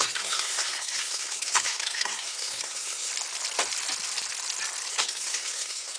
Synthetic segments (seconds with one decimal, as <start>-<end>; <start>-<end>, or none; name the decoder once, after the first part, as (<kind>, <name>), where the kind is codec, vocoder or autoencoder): 0.0-3.1 (codec, SNAC); 4.9-6.0